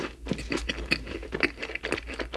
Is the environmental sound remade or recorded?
recorded